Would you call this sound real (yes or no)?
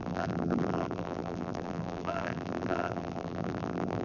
no